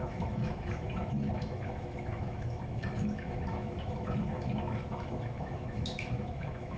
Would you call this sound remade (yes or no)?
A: yes